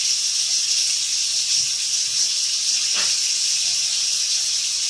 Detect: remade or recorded recorded